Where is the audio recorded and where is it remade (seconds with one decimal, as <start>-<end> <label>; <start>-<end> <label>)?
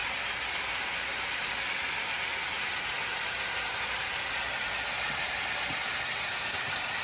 0.0-1.4 remade; 1.4-7.0 recorded